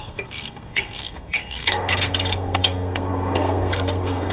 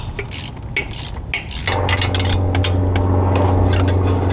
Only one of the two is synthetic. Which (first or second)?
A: first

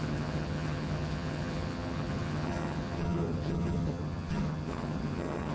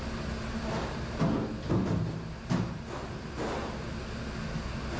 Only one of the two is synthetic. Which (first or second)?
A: first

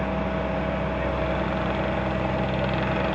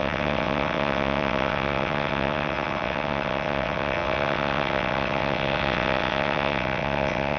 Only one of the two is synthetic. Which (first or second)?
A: second